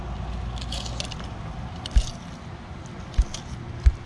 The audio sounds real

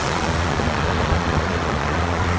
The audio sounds fake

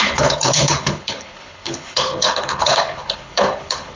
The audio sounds fake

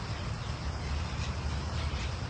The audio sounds real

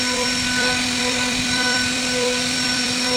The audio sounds fake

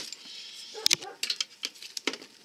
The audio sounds real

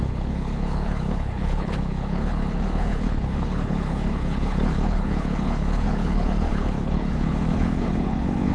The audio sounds fake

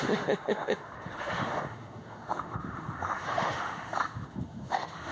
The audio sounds fake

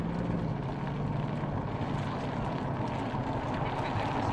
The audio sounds real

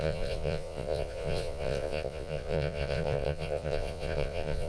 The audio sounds fake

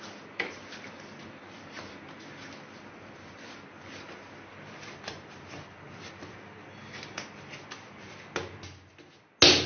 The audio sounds real